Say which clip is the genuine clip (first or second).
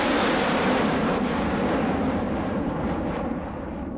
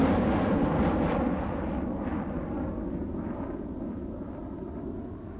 second